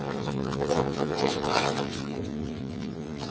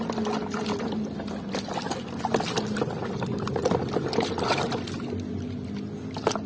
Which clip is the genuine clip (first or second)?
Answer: second